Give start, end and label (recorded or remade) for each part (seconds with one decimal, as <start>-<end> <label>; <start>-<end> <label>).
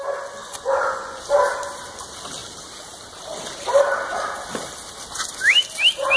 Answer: 0.0-0.4 recorded; 0.4-1.2 remade; 1.2-6.2 recorded